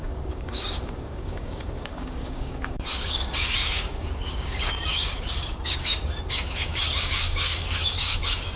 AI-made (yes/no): yes